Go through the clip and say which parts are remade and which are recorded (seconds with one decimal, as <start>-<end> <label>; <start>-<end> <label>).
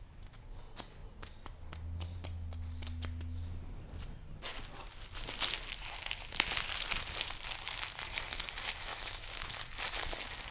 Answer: 0.0-8.9 recorded; 8.9-9.6 remade; 9.6-10.5 recorded